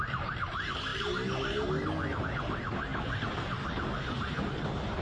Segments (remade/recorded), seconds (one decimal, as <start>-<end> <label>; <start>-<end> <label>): 0.0-5.0 recorded